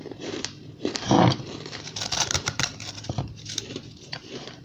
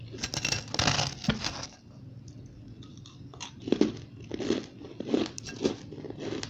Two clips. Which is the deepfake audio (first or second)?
first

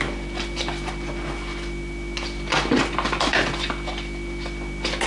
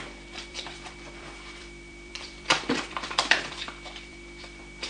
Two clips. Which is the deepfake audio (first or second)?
second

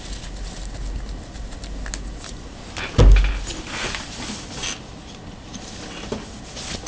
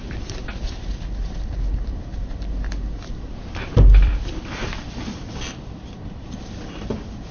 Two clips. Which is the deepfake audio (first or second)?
second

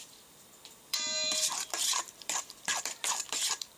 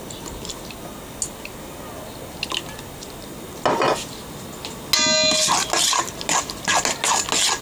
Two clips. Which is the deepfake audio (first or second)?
first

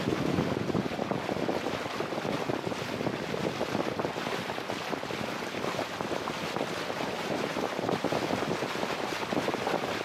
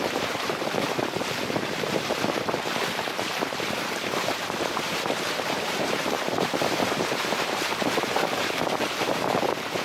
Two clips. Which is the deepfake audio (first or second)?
second